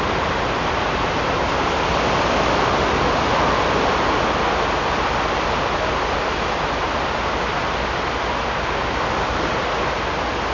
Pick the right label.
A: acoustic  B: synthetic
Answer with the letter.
A